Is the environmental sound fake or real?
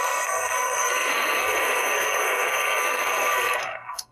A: fake